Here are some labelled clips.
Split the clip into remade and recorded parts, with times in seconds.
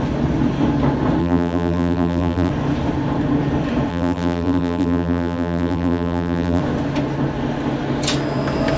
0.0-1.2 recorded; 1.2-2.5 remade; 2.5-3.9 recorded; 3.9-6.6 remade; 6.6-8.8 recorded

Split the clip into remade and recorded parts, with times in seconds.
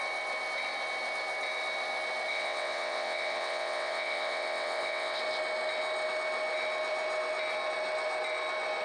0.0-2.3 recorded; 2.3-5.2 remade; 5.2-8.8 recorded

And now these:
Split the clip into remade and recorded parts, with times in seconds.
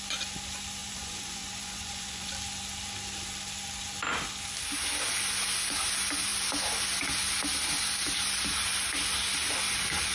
0.0-0.8 recorded; 0.8-2.3 remade; 2.3-10.1 recorded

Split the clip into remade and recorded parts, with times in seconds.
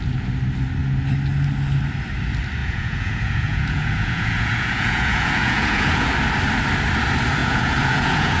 0.0-2.6 recorded; 2.6-6.1 remade; 6.1-7.4 recorded; 7.4-8.4 remade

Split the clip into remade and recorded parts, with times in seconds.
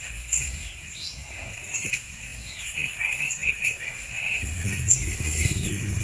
0.0-6.0 remade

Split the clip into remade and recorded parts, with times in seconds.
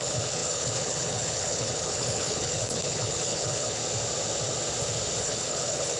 0.0-3.8 remade; 3.8-5.2 recorded; 5.2-6.0 remade